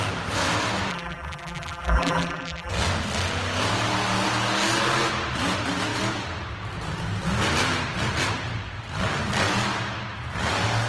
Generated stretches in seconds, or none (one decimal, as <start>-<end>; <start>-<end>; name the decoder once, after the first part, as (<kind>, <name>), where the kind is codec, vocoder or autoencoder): 0.9-2.7 (vocoder, BigVGAN v2)